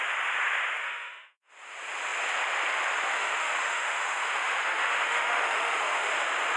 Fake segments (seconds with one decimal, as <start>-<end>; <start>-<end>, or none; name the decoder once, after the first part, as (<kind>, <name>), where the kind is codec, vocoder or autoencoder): 0.8-1.5 (autoencoder, DAC-VAE); 3.1-6.1